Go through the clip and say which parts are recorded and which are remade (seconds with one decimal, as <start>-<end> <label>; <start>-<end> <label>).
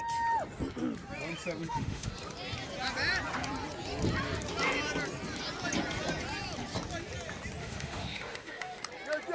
0.0-1.6 recorded; 1.6-2.1 remade; 2.1-7.6 recorded; 7.6-8.8 remade; 8.8-9.3 recorded